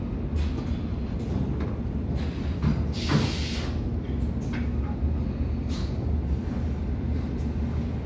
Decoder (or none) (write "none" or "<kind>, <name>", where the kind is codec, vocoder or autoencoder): none